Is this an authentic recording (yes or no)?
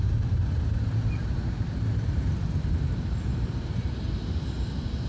no